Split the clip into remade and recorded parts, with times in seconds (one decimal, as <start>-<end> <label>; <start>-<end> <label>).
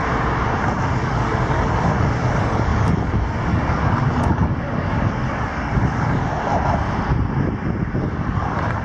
0.0-1.0 recorded; 1.0-6.2 remade; 6.2-8.1 recorded; 8.1-8.8 remade